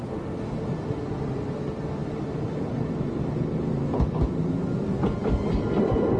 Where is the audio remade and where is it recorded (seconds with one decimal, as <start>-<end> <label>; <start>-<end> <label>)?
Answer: 0.0-6.2 recorded